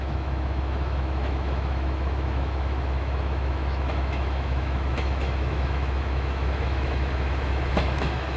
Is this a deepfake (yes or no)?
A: yes